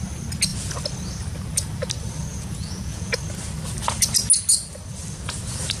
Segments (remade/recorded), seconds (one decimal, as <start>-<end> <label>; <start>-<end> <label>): 0.0-2.3 recorded; 2.3-3.2 remade; 3.2-5.8 recorded